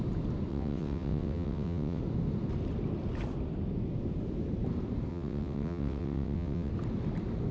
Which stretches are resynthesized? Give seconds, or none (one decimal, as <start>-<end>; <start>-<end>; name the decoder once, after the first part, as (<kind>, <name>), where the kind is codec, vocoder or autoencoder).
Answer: 0.5-2.0 (vocoder, WaveNeXt); 5.1-6.7